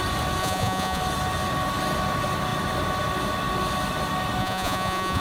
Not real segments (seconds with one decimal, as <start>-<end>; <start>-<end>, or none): 0.4-1.0; 4.4-5.2